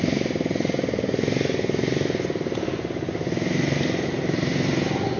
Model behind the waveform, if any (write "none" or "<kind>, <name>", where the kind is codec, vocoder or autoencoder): none